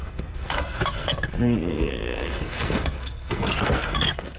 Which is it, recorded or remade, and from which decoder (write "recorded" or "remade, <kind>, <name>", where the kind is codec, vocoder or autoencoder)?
remade, codec, SNAC